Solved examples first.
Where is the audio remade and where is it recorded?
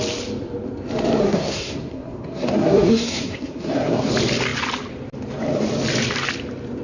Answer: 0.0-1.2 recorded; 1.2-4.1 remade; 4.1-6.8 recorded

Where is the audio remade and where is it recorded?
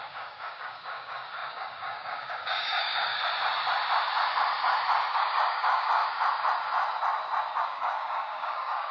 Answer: 0.0-3.2 remade; 3.2-5.1 recorded; 5.1-6.0 remade; 6.0-7.6 recorded; 7.6-8.9 remade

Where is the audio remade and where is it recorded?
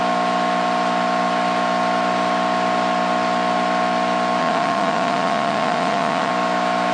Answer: 0.0-4.4 recorded; 4.4-6.3 remade; 6.3-6.9 recorded